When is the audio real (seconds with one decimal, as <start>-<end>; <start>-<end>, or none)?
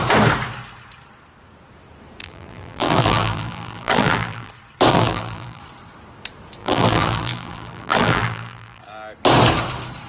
0.0-2.2; 4.5-4.9; 5.6-6.6; 8.8-10.1